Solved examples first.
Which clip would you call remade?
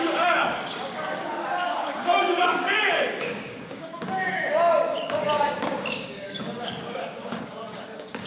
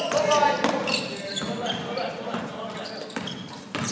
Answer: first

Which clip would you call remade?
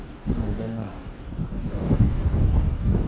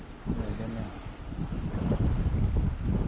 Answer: first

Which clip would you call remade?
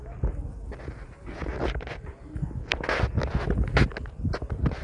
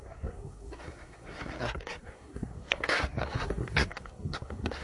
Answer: second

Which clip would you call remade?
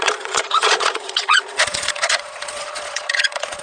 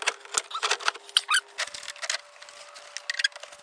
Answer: first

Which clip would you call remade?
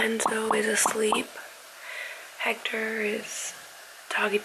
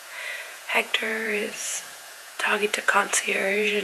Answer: second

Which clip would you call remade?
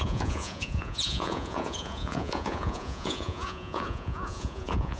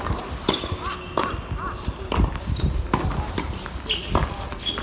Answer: first